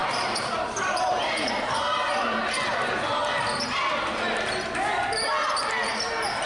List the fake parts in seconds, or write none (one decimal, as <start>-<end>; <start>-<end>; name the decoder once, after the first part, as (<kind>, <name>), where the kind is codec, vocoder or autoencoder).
0.0-3.6 (vocoder, BigVGAN v2)